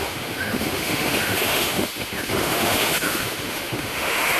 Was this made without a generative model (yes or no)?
no